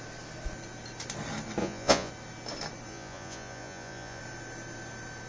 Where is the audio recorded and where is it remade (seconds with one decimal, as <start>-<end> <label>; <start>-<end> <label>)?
0.0-1.6 recorded; 1.6-2.1 remade; 2.1-2.9 recorded; 2.9-4.2 remade; 4.2-5.3 recorded

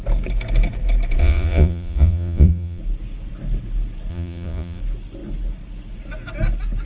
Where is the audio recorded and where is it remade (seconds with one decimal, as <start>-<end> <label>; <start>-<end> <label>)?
0.0-1.2 recorded; 1.2-2.8 remade; 2.8-4.1 recorded; 4.1-4.8 remade; 4.8-6.9 recorded

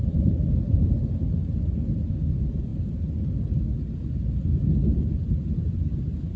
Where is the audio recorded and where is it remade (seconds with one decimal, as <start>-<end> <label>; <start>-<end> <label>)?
0.0-6.4 recorded

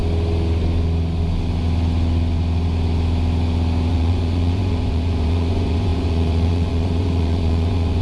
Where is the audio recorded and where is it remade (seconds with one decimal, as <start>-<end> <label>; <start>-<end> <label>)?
0.0-3.9 recorded; 3.9-8.0 remade

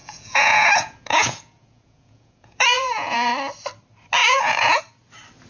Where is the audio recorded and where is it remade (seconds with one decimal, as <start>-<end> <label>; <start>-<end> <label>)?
0.0-3.3 remade; 3.3-4.2 recorded; 4.2-4.8 remade; 4.8-5.5 recorded

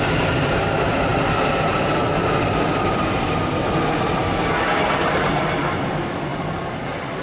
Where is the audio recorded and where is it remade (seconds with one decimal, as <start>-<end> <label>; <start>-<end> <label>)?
0.0-7.2 recorded